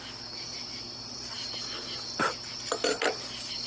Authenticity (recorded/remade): recorded